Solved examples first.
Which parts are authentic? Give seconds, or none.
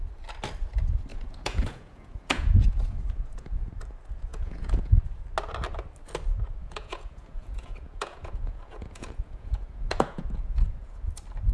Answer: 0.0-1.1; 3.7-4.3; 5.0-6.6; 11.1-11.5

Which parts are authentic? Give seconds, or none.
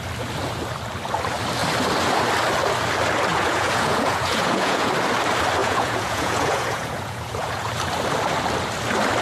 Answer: 0.0-3.3; 4.9-5.6; 7.7-9.2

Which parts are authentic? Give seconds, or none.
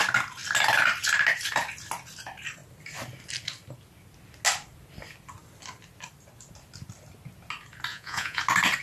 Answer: 0.0-7.9; 8.4-8.8